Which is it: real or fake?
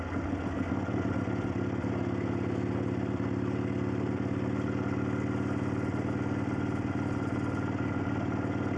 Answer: real